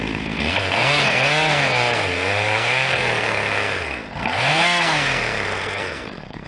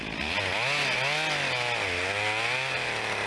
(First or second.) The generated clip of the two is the first